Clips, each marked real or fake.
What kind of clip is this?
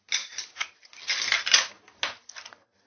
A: real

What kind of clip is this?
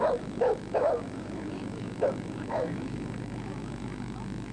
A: fake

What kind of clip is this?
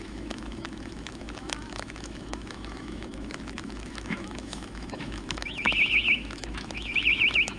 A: fake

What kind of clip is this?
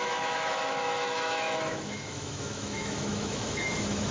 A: fake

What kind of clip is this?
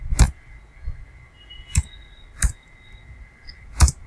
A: real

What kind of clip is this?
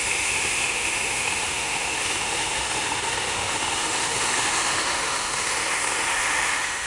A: fake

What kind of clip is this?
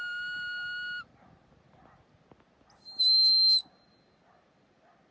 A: real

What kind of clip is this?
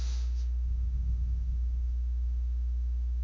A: fake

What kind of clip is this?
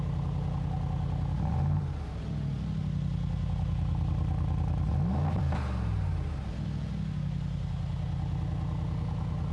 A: real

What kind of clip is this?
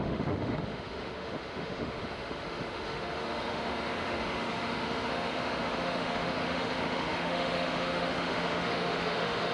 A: fake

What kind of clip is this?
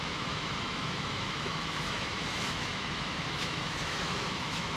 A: fake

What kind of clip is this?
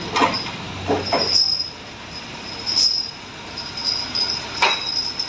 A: real